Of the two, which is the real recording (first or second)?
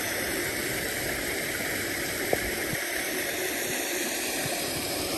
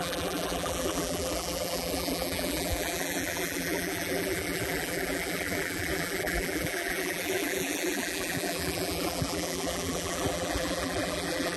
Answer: first